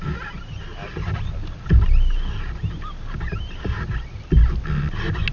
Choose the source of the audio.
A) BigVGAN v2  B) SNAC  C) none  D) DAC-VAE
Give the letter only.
C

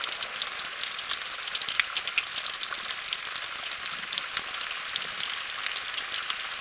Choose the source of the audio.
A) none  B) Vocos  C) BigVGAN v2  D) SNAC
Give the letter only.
A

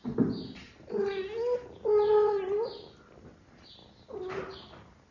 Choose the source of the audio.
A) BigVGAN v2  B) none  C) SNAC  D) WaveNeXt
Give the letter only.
B